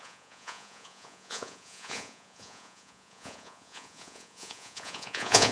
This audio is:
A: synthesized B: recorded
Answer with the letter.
A